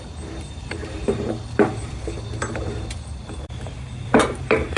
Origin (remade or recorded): remade